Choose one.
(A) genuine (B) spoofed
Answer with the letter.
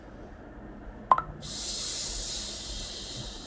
A